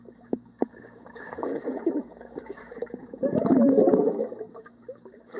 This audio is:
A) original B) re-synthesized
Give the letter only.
B